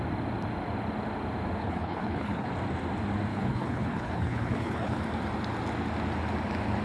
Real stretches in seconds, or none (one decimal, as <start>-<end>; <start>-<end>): 0.0-1.6; 2.5-3.3; 5.0-6.8